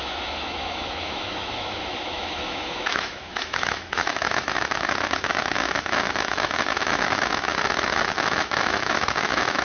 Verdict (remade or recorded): remade